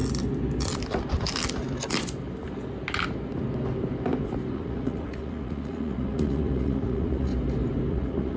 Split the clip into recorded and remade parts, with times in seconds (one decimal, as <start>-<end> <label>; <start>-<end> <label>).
0.0-4.5 recorded; 4.5-7.3 remade; 7.3-7.9 recorded; 7.9-8.4 remade